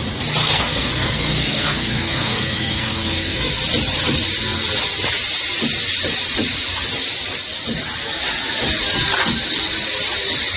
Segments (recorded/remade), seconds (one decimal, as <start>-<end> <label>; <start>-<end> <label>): 0.0-0.4 recorded; 0.4-3.5 remade; 3.5-10.6 recorded

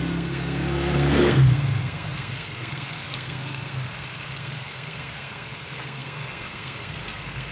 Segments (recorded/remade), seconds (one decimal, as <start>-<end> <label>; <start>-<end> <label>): 0.0-7.5 remade

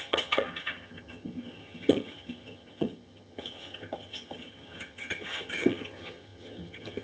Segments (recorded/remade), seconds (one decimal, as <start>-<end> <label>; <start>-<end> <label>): 0.0-7.0 remade